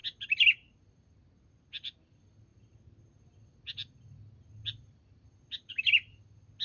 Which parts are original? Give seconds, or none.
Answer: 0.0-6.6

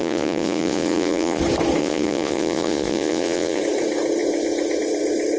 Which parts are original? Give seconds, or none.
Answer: 1.4-1.8; 3.6-5.4

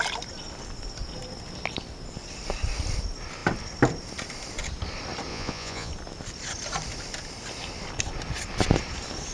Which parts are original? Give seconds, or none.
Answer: 0.0-5.3; 5.9-9.3

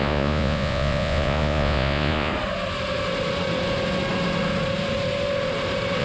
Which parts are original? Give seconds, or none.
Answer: 2.3-6.0